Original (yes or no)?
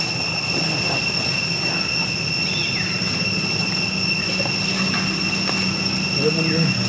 yes